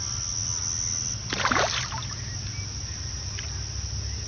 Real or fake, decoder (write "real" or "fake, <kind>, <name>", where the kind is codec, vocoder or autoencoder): real